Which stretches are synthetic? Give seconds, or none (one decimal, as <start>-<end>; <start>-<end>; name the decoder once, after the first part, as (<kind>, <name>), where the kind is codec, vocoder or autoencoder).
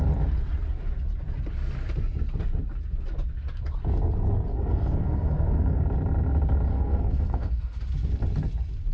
4.5-5.8 (codec, SNAC); 6.7-7.8